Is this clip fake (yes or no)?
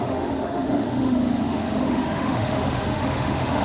yes